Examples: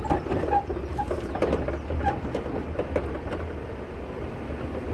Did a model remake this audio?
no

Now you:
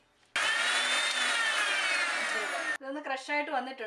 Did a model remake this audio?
no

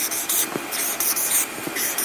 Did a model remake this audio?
no